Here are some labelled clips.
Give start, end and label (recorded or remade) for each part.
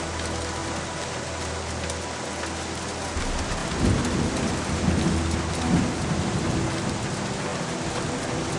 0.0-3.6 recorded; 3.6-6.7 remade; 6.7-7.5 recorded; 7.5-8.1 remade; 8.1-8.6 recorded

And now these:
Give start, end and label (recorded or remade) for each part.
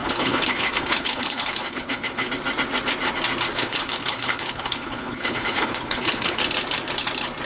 0.0-2.3 remade; 2.3-3.5 recorded; 3.5-6.4 remade; 6.4-7.5 recorded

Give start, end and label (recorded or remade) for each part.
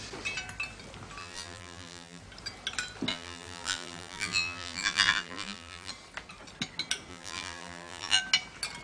0.0-1.2 recorded; 1.2-2.2 remade; 2.2-3.1 recorded; 3.1-5.9 remade; 5.9-7.1 recorded; 7.1-8.2 remade; 8.2-8.8 recorded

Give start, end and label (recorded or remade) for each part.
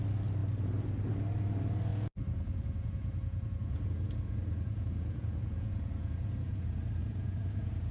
0.0-1.9 recorded; 1.9-6.6 remade; 6.6-7.0 recorded; 7.0-7.9 remade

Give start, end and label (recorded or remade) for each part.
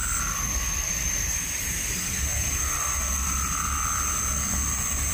0.0-0.9 recorded; 0.9-2.3 remade; 2.3-5.1 recorded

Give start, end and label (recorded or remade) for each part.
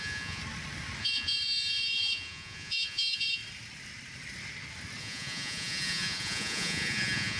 0.0-0.4 remade; 0.4-1.0 recorded; 1.0-3.4 remade; 3.4-5.0 recorded; 5.0-7.4 remade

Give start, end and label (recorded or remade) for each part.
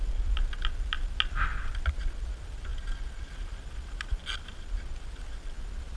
0.0-6.0 recorded